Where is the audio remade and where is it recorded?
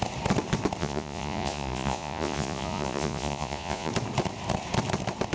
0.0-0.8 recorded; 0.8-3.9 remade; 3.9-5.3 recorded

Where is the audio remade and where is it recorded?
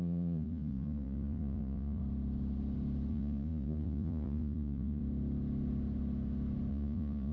0.0-2.0 remade; 2.0-3.1 recorded; 3.1-5.0 remade; 5.0-6.7 recorded; 6.7-7.3 remade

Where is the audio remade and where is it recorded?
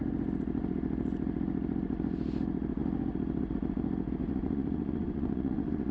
0.0-4.2 recorded; 4.2-5.9 remade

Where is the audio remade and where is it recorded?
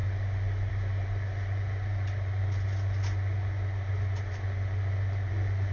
0.0-5.7 recorded